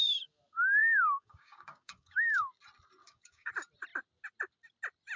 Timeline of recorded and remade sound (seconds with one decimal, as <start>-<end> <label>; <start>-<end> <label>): 0.0-0.8 recorded; 0.8-2.5 remade; 2.5-3.0 recorded; 3.0-3.5 remade; 3.5-5.2 recorded